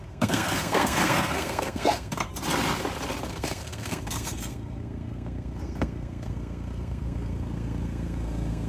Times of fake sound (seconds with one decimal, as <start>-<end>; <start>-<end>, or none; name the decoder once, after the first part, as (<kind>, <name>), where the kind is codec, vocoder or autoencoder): 0.0-2.3 (codec, SNAC); 3.3-8.7